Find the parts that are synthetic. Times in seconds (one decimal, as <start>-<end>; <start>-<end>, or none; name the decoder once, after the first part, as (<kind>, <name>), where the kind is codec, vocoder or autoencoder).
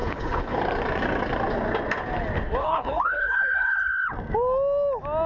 0.0-0.6 (codec, HILCodec); 2.6-4.1